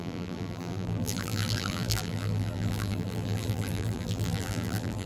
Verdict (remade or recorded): remade